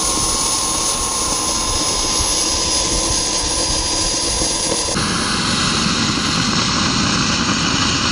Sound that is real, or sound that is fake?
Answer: real